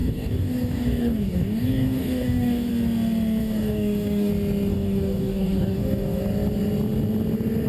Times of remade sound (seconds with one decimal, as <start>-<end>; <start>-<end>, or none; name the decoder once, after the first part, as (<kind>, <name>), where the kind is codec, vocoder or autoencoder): 0.0-2.7 (codec, DAC); 3.4-4.3; 4.7-6.2